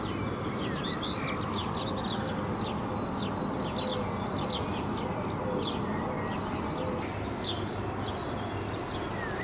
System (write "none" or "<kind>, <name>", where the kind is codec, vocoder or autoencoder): none